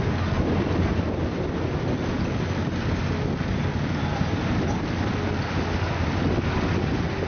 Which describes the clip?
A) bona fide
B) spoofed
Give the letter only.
A